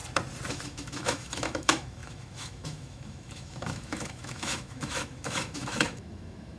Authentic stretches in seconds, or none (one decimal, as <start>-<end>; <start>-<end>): 0.0-0.5